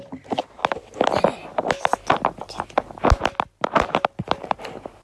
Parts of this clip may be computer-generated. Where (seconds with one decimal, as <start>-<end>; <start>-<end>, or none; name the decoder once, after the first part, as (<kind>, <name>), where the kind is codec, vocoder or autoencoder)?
0.0-0.6 (vocoder, BigVGAN v2); 3.6-5.0